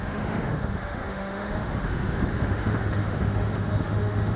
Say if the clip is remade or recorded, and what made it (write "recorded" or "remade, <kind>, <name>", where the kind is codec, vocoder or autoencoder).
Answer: remade, autoencoder, DAC-VAE